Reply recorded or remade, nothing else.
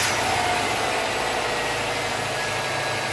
recorded